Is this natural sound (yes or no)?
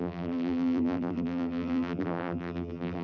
no